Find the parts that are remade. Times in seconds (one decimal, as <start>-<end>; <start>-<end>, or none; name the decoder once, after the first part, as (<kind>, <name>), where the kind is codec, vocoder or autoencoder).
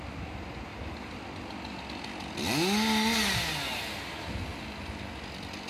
none